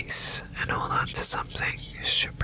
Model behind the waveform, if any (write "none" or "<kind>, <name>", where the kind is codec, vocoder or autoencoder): none